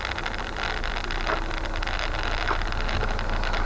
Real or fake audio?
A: real